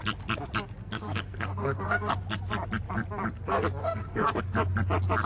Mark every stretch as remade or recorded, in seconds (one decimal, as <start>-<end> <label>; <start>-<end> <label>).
0.0-0.8 recorded; 0.8-2.1 remade; 2.1-3.8 recorded; 3.8-4.4 remade; 4.4-5.3 recorded